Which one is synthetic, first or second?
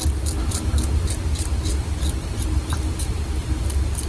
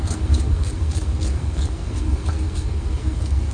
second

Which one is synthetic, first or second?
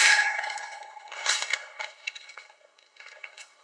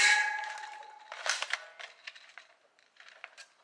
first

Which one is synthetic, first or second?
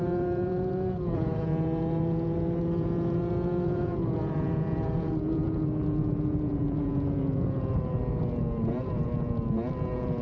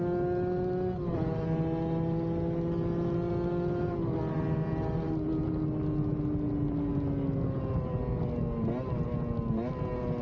first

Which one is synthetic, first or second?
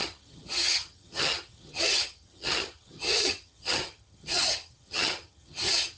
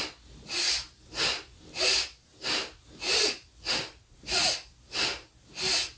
first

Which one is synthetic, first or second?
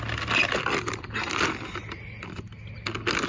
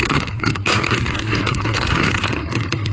second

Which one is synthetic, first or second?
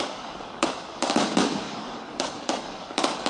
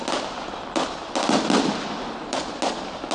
first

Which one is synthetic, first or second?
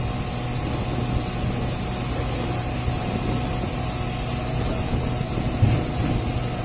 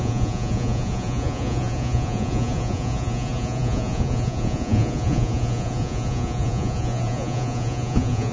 second